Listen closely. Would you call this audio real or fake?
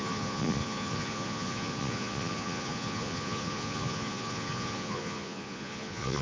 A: fake